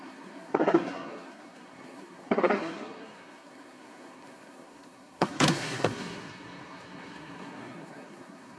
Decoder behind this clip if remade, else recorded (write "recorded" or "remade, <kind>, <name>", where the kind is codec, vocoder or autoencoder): remade, codec, SNAC